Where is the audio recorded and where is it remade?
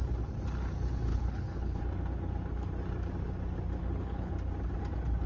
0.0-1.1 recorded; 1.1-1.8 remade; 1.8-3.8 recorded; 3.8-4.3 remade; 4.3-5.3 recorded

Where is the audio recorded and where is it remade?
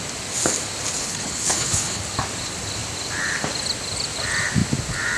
0.0-1.0 recorded; 1.0-2.0 remade; 2.0-5.2 recorded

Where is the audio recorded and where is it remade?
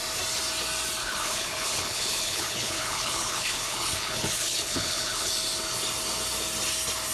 0.0-1.0 recorded; 1.0-5.3 remade; 5.3-7.1 recorded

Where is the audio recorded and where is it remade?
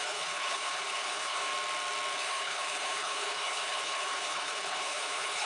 0.0-1.5 remade; 1.5-2.1 recorded; 2.1-5.5 remade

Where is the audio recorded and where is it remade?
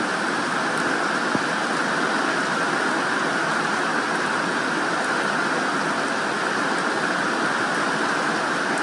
0.0-8.8 recorded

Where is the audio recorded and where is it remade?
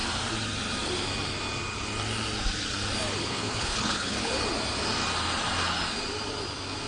0.0-3.2 recorded; 3.2-4.3 remade; 4.3-6.9 recorded